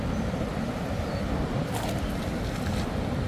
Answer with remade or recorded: recorded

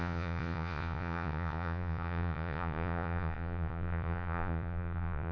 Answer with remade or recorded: remade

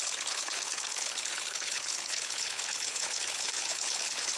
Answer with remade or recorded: remade